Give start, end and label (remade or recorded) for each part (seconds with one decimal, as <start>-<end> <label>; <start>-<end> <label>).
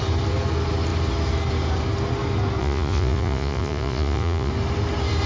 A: 0.0-2.6 recorded; 2.6-4.5 remade; 4.5-5.3 recorded